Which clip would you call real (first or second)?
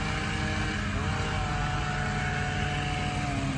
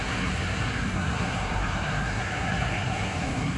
first